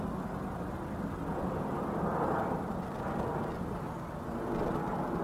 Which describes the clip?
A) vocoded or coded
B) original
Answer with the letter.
B